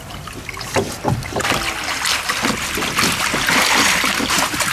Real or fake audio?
real